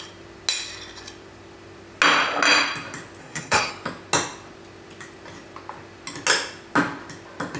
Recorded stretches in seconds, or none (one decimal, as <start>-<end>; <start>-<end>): 0.0-3.2; 3.7-7.6

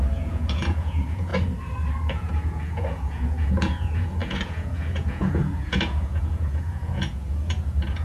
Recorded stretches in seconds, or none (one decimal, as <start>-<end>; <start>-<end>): 1.3-2.0

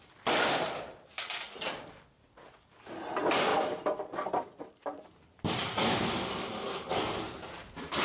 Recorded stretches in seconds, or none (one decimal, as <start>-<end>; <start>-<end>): 0.0-3.5; 5.1-8.0

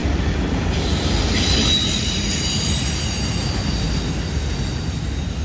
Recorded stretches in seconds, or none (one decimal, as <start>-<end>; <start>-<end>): 3.0-3.4; 4.0-5.4

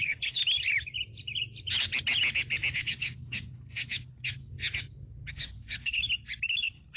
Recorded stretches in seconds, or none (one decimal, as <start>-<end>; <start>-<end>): 0.4-2.7; 4.4-5.3; 6.0-6.6

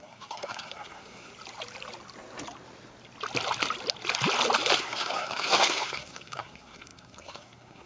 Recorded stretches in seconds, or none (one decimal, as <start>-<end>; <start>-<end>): 1.3-4.8

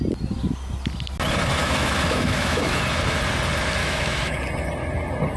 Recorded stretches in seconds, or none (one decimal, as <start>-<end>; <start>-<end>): 0.0-1.6; 2.8-3.8; 4.4-5.4

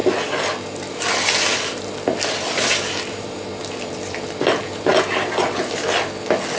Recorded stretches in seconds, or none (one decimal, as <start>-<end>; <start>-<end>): 0.0-6.6